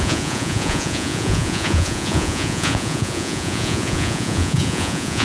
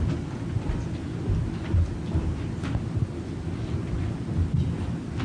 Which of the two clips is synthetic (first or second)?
first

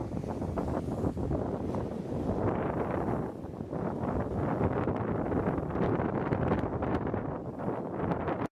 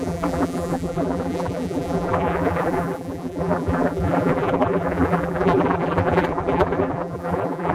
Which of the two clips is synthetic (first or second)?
second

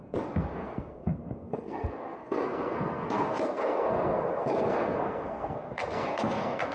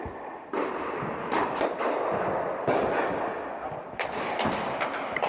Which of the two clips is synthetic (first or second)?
first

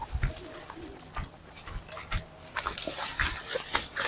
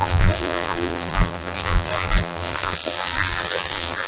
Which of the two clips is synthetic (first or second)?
second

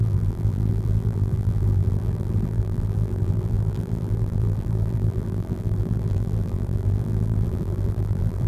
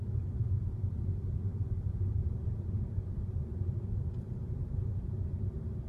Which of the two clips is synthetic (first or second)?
first